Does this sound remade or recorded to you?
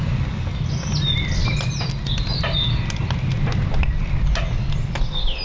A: recorded